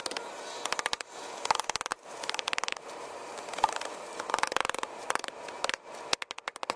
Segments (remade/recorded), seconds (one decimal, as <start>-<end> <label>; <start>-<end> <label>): 0.0-1.9 recorded; 1.9-6.0 remade; 6.0-6.8 recorded